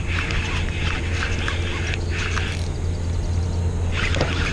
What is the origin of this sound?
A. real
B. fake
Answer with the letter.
A